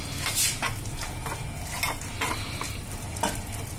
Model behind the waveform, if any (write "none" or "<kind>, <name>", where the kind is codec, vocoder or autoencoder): none